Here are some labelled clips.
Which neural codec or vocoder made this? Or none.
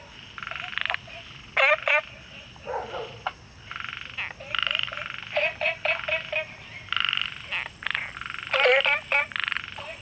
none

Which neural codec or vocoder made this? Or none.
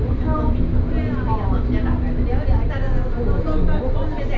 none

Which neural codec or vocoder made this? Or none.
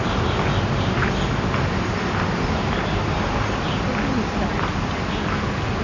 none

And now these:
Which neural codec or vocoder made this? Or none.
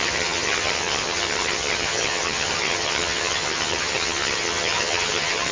vocoder, HiFi-GAN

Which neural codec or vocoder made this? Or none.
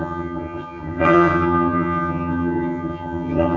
vocoder, HiFi-GAN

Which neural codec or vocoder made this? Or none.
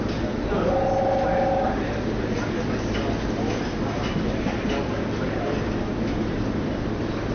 none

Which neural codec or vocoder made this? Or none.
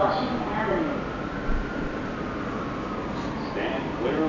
none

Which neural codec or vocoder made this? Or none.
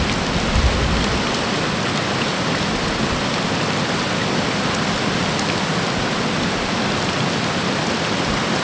none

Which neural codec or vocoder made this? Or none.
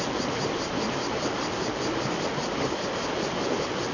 none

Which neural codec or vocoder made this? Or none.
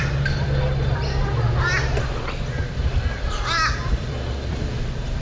none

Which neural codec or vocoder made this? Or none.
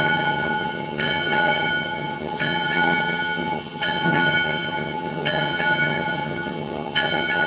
vocoder, HiFi-GAN